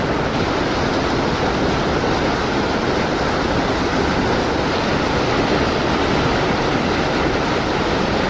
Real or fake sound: real